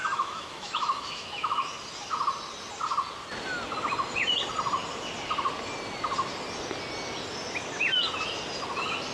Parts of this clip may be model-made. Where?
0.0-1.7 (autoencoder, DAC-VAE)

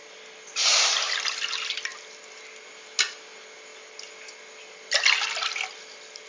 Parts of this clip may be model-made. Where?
none